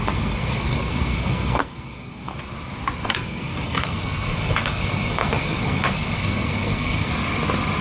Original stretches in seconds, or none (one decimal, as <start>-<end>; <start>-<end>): 2.3-3.1; 7.1-7.8